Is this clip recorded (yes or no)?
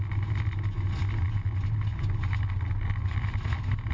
yes